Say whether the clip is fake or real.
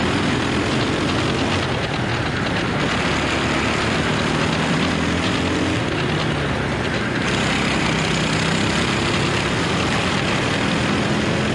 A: real